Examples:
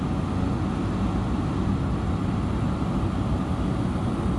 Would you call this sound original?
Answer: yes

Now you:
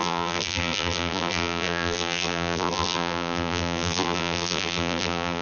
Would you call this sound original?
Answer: no